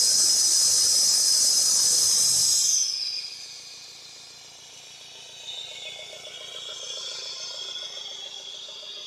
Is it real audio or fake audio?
real